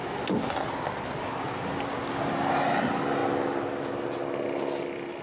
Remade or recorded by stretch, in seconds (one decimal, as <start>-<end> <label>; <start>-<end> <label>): 0.0-5.2 recorded